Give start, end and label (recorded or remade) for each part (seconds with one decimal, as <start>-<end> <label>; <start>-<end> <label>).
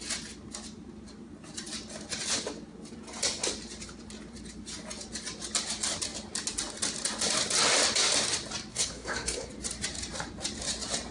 0.0-8.7 recorded; 8.7-9.5 remade; 9.5-11.1 recorded